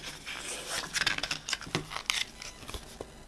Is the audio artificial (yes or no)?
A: no